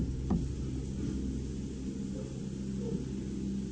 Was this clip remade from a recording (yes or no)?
no